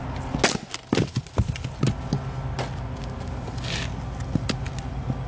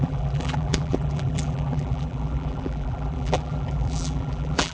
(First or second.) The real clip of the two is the first